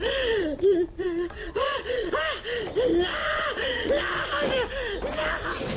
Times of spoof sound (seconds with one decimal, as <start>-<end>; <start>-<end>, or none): 0.4-2.2; 3.2-3.9